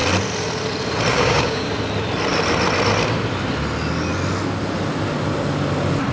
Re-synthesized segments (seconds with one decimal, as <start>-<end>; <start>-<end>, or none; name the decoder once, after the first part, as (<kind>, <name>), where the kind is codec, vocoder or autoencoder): 1.1-1.7 (codec, DAC)